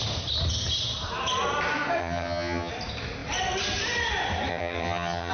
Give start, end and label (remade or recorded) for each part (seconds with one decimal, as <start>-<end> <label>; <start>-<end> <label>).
0.0-2.0 recorded; 2.0-2.7 remade; 2.7-4.5 recorded; 4.5-5.3 remade